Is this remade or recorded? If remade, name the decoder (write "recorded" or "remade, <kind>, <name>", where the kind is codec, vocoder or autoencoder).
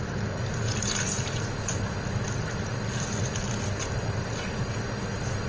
recorded